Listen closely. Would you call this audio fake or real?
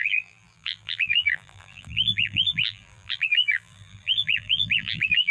fake